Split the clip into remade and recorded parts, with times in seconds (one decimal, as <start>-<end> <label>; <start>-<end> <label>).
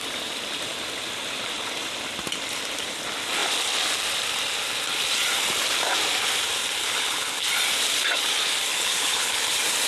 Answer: 0.0-6.8 recorded; 6.8-7.4 remade; 7.4-8.7 recorded; 8.7-9.4 remade; 9.4-9.9 recorded